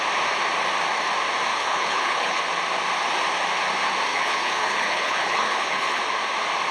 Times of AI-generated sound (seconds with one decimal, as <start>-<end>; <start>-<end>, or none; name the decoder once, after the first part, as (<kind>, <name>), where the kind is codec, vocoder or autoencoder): 1.5-2.4 (codec, HILCodec); 4.1-6.0

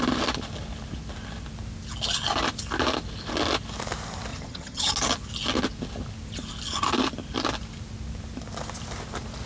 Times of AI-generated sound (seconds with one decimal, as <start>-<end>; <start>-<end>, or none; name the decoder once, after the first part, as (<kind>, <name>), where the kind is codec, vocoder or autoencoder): 4.3-4.9 (vocoder, HiFi-GAN)

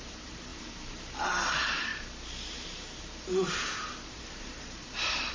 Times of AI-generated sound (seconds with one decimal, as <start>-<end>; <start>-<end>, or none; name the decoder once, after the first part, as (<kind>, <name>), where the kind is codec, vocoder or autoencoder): 0.0-5.3 (vocoder, BigVGAN v2)

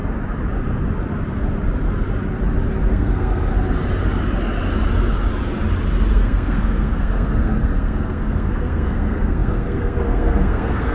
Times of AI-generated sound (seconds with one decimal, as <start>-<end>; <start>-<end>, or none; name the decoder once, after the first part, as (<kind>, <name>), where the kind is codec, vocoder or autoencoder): 2.9-3.5 (codec, SNAC); 6.1-10.9

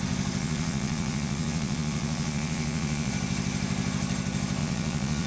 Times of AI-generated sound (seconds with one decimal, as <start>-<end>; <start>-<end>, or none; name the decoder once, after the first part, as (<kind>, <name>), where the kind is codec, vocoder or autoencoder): 0.4-3.1 (vocoder, Vocos); 4.6-5.3

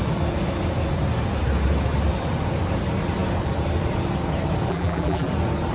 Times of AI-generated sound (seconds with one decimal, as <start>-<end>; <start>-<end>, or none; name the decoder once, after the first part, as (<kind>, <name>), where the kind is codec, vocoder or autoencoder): 4.7-5.3 (vocoder, BigVGAN v2)